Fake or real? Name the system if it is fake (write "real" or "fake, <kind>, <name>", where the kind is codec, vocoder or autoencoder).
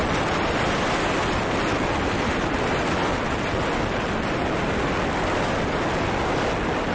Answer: real